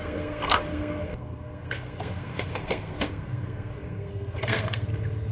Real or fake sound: fake